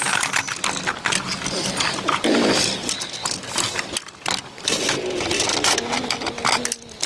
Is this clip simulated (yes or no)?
no